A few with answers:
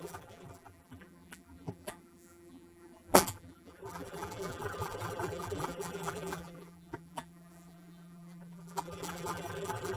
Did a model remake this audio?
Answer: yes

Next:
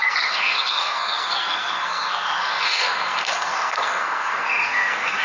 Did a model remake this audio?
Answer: yes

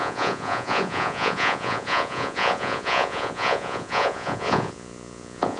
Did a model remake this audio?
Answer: yes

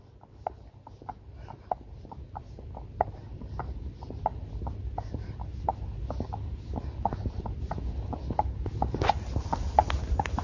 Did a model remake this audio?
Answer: no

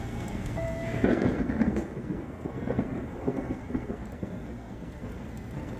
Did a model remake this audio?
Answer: yes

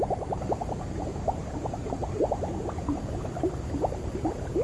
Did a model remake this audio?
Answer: no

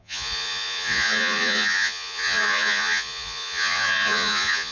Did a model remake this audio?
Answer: yes